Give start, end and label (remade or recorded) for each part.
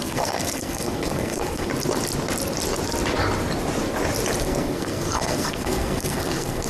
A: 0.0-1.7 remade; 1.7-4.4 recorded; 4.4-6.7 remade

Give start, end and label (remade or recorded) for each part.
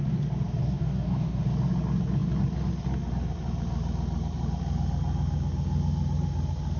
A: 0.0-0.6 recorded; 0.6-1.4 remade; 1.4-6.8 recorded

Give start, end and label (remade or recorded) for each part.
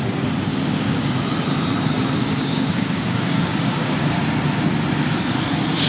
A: 0.0-0.5 recorded; 0.5-1.1 remade; 1.1-2.2 recorded; 2.2-4.2 remade; 4.2-5.9 recorded